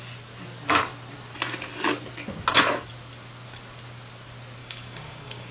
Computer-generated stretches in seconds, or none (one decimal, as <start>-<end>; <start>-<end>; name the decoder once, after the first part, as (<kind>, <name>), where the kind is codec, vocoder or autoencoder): 4.6-5.5 (codec, DAC)